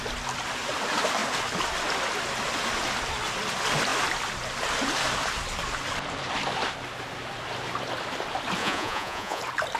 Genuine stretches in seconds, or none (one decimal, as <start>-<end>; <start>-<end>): 0.0-8.6; 9.4-9.8